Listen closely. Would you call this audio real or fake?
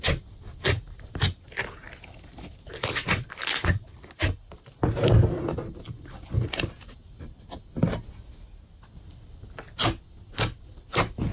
real